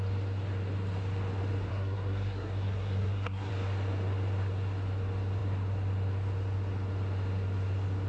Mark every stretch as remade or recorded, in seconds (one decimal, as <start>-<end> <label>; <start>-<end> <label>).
0.0-1.7 recorded; 1.7-3.5 remade; 3.5-8.1 recorded

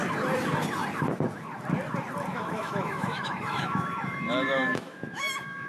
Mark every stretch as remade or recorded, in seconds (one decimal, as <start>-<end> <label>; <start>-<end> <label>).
0.0-2.3 recorded; 2.3-5.7 remade